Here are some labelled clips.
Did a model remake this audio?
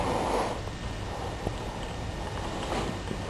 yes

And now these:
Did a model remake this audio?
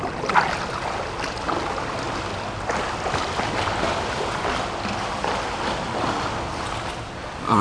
no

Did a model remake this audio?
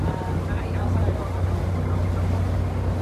no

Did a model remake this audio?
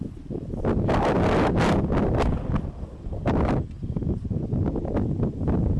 no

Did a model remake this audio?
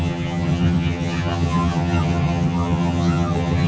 yes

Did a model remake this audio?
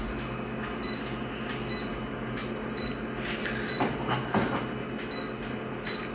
no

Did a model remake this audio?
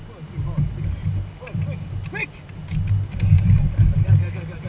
no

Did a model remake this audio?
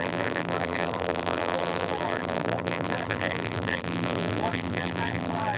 yes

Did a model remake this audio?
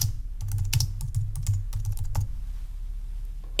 no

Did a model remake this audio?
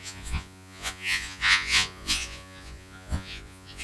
yes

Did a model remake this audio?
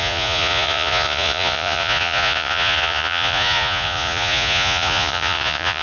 yes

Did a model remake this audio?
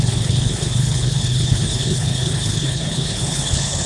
yes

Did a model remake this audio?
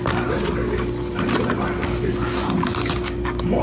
no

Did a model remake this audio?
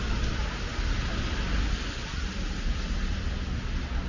no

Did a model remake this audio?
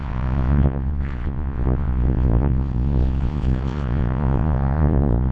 yes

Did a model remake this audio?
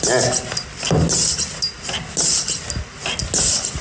no